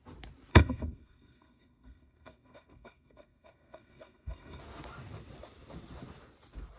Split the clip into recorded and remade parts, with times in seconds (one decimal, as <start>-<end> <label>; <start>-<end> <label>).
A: 0.0-0.5 recorded; 0.5-4.6 remade; 4.6-6.8 recorded